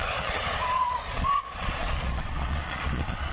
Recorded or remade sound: remade